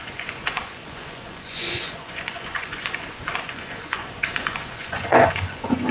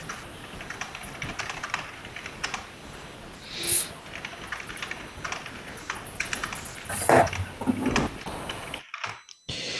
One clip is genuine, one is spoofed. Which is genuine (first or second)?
second